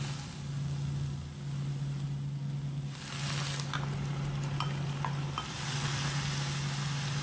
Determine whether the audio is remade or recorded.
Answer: recorded